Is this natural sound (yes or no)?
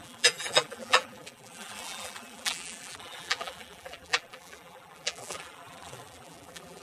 no